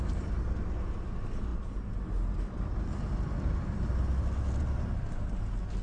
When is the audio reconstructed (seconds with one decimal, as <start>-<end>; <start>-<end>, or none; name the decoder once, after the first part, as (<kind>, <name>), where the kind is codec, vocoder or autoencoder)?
none